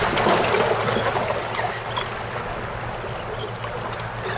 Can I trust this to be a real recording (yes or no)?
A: yes